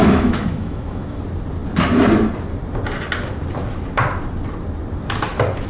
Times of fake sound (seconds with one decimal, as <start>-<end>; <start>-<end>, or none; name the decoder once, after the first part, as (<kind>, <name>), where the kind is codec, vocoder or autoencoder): 0.0-1.2 (autoencoder, DAC-VAE)